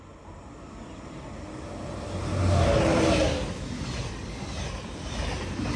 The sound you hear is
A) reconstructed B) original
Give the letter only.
B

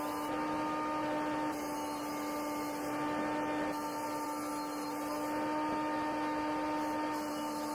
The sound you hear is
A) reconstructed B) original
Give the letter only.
B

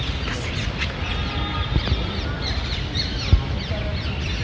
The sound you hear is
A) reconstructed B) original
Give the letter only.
B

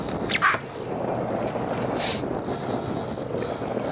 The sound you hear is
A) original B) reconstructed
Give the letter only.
A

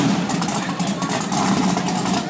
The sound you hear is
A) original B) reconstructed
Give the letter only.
A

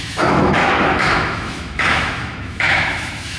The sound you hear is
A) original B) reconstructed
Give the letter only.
B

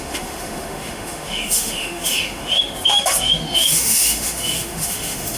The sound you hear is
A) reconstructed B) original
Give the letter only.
A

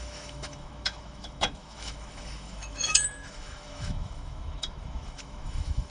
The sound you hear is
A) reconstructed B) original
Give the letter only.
A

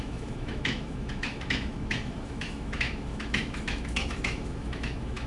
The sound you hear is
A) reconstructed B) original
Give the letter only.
A